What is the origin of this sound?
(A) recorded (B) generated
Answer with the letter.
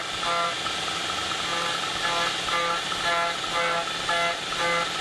A